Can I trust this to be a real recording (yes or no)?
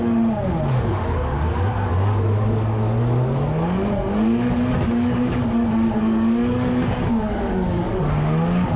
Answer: no